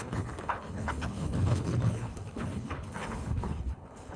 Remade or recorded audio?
remade